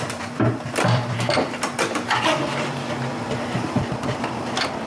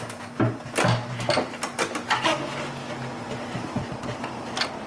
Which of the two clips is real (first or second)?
second